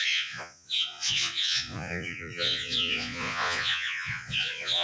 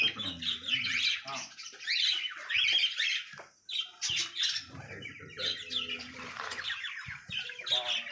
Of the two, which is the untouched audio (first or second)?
second